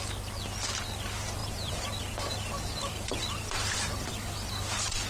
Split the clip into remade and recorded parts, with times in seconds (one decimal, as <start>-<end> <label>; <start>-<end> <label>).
0.0-1.4 recorded; 1.4-4.5 remade; 4.5-5.1 recorded